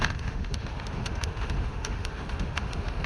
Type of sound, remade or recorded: remade